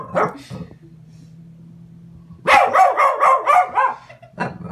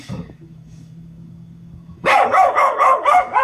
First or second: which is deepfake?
second